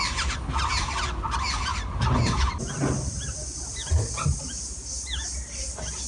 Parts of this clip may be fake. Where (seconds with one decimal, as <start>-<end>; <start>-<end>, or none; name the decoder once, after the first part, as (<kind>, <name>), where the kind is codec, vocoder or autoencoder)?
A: none